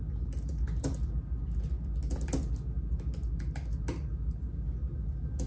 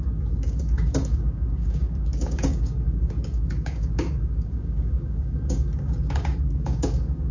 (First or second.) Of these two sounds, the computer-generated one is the second